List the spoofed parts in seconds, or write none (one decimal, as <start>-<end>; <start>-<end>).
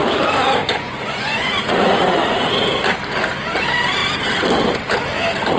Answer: 0.6-2.5